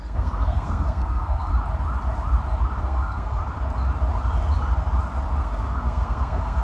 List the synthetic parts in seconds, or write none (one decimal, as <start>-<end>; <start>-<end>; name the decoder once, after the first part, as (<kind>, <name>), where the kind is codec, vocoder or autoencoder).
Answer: 0.0-1.5 (codec, SNAC); 2.8-3.4; 5.4-6.6